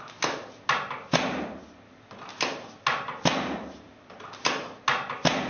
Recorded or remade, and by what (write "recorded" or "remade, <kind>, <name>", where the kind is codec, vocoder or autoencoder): recorded